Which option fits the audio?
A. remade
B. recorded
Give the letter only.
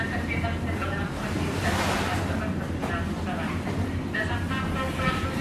B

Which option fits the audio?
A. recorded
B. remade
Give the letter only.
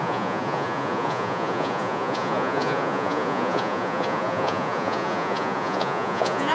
B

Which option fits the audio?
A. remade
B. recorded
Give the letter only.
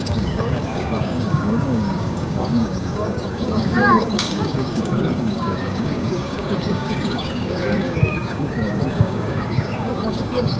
A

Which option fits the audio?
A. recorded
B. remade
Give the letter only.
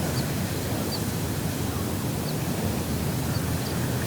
A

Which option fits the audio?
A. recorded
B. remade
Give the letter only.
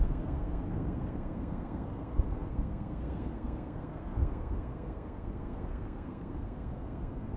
B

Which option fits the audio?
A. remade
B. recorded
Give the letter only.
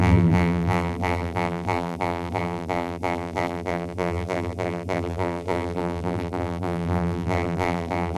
A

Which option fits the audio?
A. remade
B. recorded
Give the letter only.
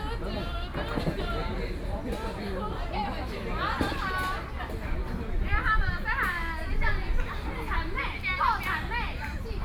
B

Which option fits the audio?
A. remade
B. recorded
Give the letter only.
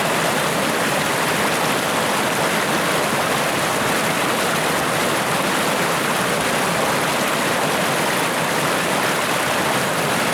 B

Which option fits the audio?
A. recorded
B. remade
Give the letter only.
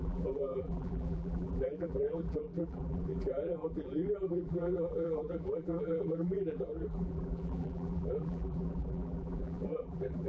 B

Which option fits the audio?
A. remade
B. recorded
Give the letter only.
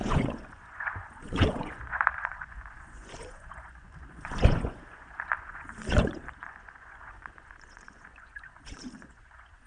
A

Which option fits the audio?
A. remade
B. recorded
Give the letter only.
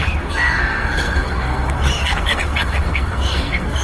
A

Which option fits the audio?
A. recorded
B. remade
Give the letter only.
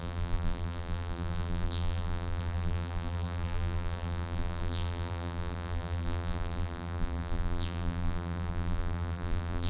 B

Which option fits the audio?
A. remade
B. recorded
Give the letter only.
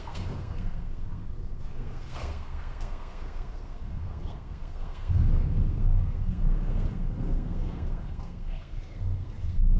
A